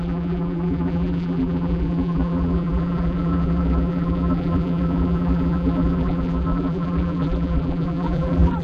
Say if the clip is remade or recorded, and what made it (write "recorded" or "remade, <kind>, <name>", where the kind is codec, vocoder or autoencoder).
remade, vocoder, BigVGAN v2